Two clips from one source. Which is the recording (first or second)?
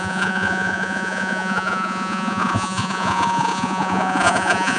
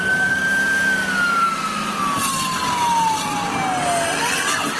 second